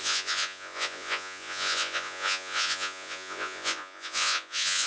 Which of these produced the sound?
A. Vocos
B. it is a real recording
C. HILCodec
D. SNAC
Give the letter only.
A